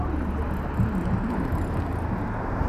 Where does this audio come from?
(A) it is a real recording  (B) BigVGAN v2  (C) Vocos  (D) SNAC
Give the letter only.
A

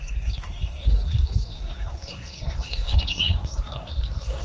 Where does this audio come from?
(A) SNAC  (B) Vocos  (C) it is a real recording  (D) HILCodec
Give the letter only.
A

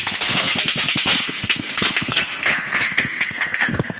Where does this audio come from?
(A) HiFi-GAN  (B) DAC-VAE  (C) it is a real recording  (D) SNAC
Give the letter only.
D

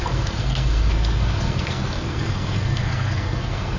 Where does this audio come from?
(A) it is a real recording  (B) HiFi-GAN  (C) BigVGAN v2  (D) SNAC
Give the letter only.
D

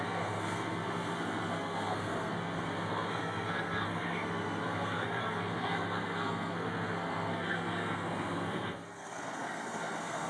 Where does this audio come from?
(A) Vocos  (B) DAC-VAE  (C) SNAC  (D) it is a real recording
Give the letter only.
C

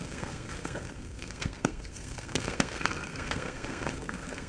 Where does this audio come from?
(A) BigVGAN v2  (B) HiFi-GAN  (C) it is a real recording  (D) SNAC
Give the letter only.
D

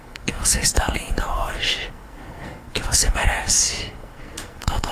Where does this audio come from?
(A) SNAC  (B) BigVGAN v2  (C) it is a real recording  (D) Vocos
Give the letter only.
A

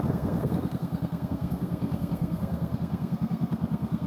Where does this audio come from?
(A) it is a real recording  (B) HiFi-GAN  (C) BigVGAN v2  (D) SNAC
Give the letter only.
D